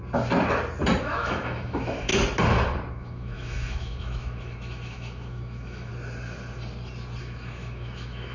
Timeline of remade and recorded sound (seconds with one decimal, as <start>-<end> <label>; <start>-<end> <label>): 0.0-1.0 recorded; 1.0-2.1 remade; 2.1-2.9 recorded; 2.9-5.9 remade; 5.9-7.2 recorded; 7.2-8.3 remade